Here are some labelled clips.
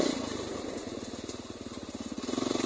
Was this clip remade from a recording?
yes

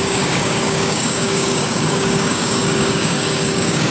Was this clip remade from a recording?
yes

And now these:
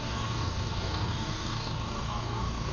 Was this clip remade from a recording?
yes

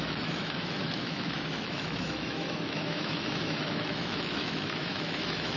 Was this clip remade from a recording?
yes